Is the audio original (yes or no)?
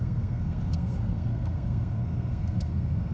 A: no